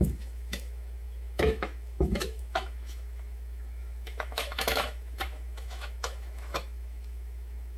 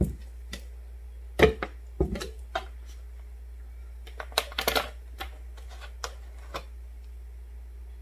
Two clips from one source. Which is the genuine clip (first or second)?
second